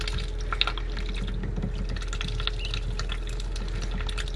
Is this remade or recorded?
recorded